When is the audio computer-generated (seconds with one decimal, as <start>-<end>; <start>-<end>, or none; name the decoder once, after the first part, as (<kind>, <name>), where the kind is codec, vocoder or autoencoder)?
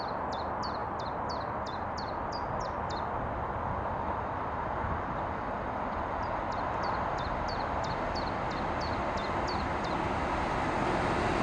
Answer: none